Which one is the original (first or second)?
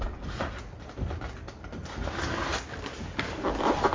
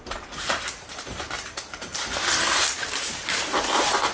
first